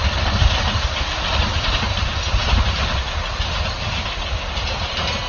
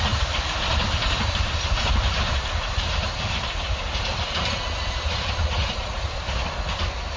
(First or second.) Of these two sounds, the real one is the first